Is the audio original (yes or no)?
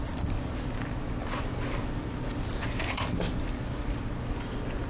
yes